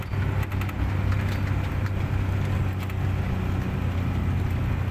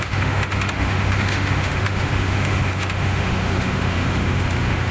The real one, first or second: first